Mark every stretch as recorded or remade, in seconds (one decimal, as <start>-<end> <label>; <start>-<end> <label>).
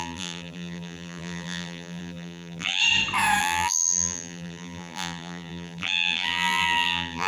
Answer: 0.0-2.8 remade; 2.8-3.4 recorded; 3.4-7.3 remade